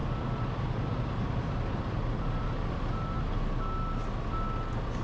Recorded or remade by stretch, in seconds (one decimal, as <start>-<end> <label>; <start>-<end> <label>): 0.0-3.0 remade; 3.0-5.0 recorded